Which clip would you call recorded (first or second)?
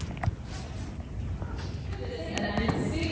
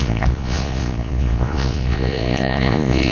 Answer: first